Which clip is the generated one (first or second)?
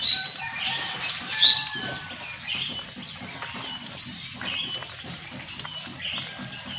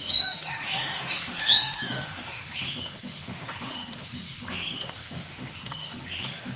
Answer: second